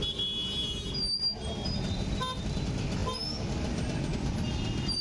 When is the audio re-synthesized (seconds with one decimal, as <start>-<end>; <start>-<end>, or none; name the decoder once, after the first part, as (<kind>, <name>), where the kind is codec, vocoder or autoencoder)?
none